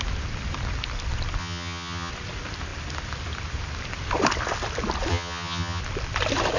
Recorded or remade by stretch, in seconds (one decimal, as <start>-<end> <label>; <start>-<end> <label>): 0.0-1.4 recorded; 1.4-2.1 remade; 2.1-5.1 recorded; 5.1-5.8 remade; 5.8-6.6 recorded